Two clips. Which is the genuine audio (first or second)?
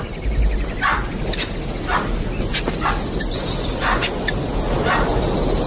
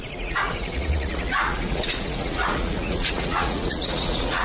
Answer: first